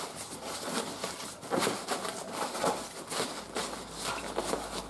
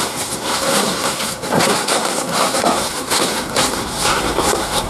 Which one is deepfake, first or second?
second